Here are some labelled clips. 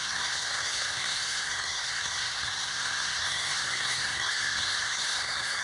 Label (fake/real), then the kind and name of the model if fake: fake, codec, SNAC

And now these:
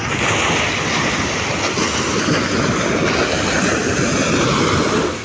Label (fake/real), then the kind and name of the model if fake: real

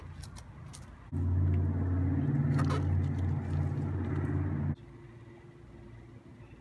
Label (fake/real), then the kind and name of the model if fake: real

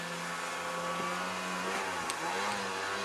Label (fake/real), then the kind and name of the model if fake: real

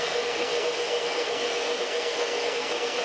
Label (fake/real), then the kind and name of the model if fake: fake, codec, SNAC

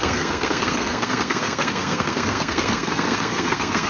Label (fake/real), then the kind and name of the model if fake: fake, codec, SNAC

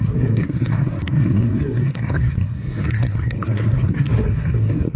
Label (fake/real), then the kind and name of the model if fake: fake, codec, SNAC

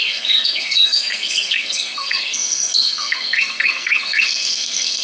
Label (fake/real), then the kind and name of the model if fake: fake, codec, SNAC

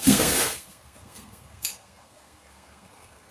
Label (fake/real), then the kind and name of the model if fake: fake, codec, SNAC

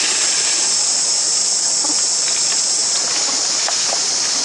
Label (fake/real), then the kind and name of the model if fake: real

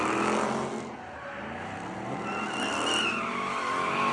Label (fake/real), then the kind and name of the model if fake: real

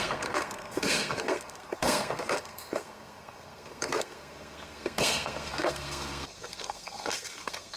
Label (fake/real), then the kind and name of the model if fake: fake, codec, SNAC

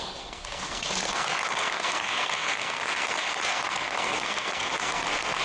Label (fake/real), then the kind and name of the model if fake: fake, codec, SNAC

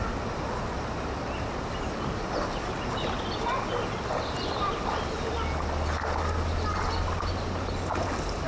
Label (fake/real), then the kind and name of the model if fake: real